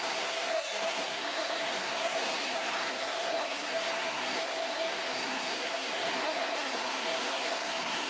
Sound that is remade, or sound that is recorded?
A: remade